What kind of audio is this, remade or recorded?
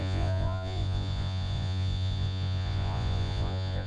remade